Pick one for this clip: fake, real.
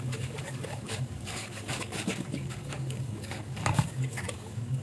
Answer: fake